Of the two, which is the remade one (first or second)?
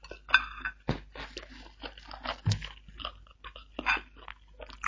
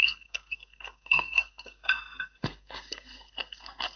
second